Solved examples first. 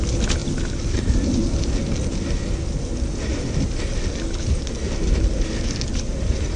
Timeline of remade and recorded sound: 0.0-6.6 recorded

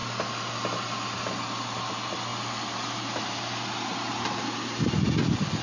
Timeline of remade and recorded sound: 0.0-5.6 recorded

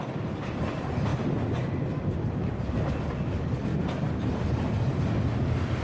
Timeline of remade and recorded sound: 0.0-5.8 recorded

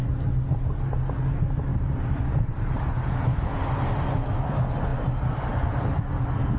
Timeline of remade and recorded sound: 0.0-1.7 recorded; 1.7-3.5 remade; 3.5-4.9 recorded; 4.9-6.0 remade; 6.0-6.6 recorded

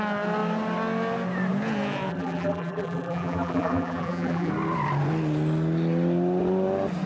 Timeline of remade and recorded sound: 0.0-2.1 recorded; 2.1-4.5 remade; 4.5-7.1 recorded